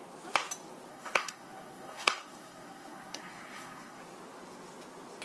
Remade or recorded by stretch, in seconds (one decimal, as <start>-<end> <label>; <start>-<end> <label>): 0.0-0.9 recorded; 0.9-4.0 remade; 4.0-5.2 recorded